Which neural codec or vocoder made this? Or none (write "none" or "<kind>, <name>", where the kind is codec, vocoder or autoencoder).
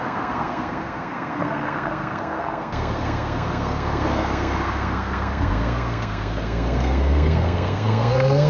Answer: codec, SNAC